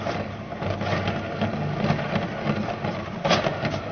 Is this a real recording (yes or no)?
yes